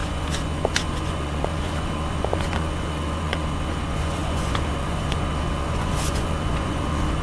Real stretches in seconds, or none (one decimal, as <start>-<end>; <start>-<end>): none